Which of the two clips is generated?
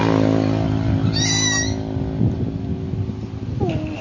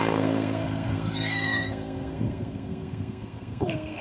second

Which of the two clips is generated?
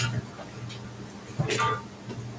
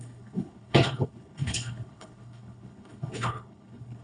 second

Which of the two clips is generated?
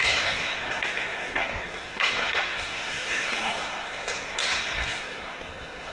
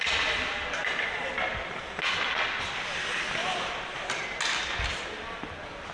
first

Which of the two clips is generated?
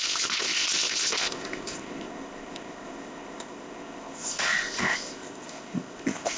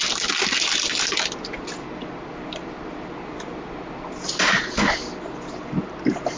first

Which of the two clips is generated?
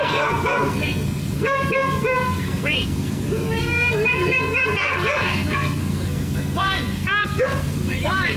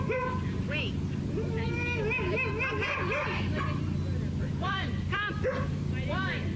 first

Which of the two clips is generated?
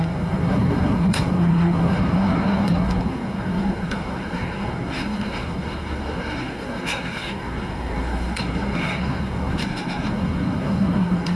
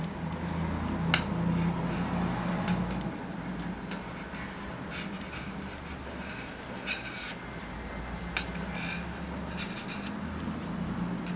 first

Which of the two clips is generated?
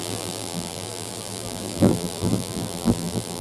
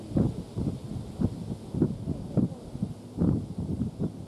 first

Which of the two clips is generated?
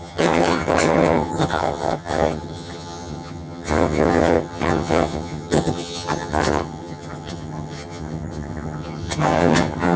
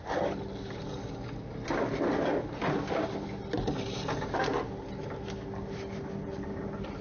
first